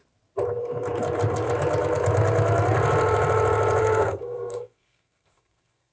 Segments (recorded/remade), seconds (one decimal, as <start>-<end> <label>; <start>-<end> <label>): 0.0-3.8 recorded; 3.8-5.9 remade